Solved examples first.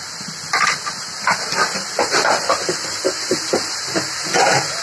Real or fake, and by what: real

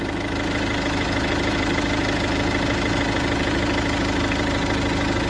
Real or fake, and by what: real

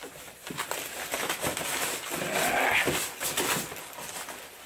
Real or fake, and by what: real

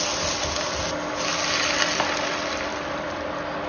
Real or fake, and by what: real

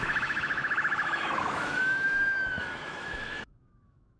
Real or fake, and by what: fake, autoencoder, DAC-VAE